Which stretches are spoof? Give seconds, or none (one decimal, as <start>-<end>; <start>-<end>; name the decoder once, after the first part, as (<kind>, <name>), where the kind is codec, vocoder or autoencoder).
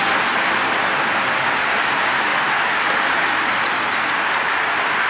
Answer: none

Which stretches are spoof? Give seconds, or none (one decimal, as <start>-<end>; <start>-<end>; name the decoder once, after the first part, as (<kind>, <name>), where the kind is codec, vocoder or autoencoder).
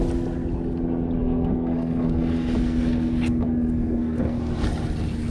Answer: 1.2-4.4 (codec, SNAC)